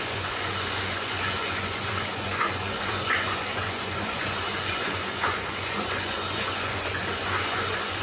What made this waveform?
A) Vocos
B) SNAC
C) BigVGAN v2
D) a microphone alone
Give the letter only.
A